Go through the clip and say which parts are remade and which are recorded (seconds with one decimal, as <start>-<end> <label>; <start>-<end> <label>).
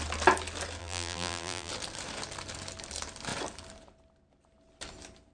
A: 0.0-0.8 recorded; 0.8-1.7 remade; 1.7-5.3 recorded